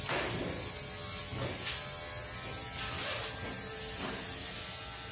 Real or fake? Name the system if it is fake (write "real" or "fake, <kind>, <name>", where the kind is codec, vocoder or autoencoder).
real